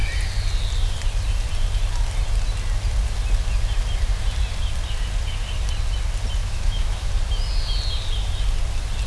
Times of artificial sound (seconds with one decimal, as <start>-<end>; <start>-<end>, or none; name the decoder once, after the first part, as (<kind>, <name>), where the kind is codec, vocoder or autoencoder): 6.4-7.1 (autoencoder, DAC-VAE)